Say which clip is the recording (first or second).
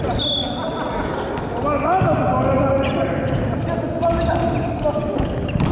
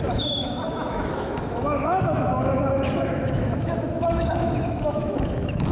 first